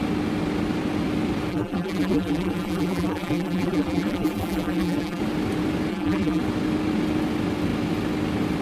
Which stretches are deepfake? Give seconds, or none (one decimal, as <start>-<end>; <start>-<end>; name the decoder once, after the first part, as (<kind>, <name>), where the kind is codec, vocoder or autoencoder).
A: 1.5-5.2 (vocoder, BigVGAN v2); 5.9-6.4